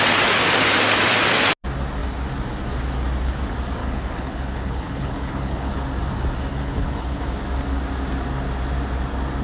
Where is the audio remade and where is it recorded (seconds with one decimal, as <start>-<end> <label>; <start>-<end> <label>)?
0.0-3.8 recorded; 3.8-5.7 remade; 5.7-6.5 recorded; 6.5-7.2 remade; 7.2-9.4 recorded